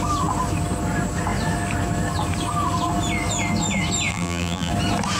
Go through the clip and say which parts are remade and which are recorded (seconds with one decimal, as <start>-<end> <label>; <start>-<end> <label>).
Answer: 0.0-4.1 recorded; 4.1-4.7 remade; 4.7-5.2 recorded

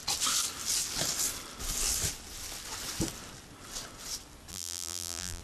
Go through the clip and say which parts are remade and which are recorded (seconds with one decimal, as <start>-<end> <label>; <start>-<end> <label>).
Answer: 0.0-4.5 recorded; 4.5-5.4 remade

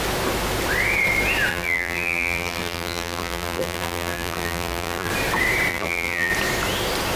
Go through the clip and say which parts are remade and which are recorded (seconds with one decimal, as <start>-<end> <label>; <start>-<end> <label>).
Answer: 0.0-1.5 recorded; 1.5-5.1 remade; 5.1-5.7 recorded; 5.7-6.3 remade; 6.3-7.2 recorded

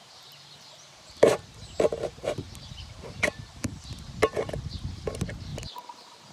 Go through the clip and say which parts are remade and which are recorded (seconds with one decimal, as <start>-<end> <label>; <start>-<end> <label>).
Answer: 0.0-3.8 remade; 3.8-5.5 recorded; 5.5-6.3 remade